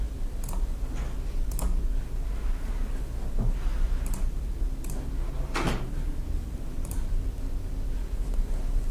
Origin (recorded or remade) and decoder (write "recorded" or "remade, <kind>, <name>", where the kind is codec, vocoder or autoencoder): recorded